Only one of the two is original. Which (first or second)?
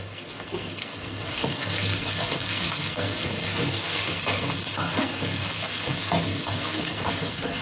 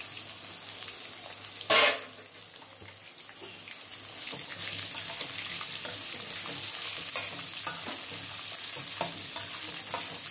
second